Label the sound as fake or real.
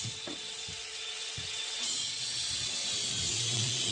fake